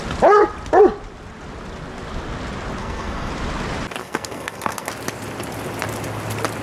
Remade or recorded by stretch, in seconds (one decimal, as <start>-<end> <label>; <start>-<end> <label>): 0.0-2.8 recorded; 2.8-3.3 remade; 3.3-4.0 recorded; 4.0-4.9 remade; 4.9-6.6 recorded